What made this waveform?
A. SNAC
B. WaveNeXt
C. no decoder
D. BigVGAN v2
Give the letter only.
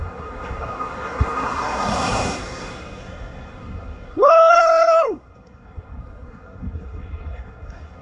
A